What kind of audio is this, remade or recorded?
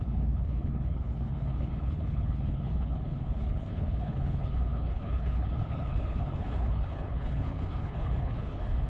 remade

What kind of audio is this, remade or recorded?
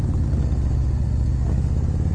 recorded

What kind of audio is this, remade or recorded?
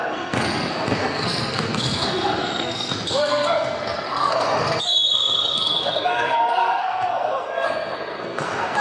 remade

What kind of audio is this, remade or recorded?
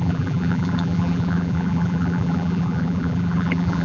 remade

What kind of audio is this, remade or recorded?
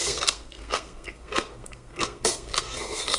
remade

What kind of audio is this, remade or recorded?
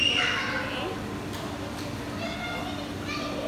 recorded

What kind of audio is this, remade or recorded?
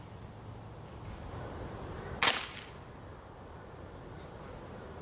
recorded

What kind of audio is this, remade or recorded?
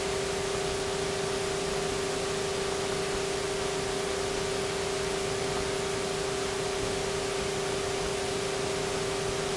recorded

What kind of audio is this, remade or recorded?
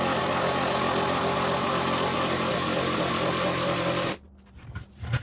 recorded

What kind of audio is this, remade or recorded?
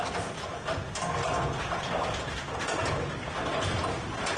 recorded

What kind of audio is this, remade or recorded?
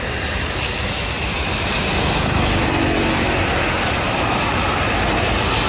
recorded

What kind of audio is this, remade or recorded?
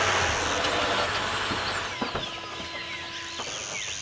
recorded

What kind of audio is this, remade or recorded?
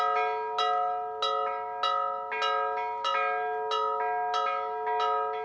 recorded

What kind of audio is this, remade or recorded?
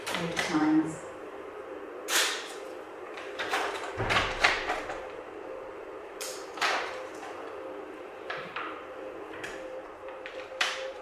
remade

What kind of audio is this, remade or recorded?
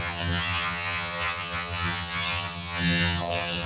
remade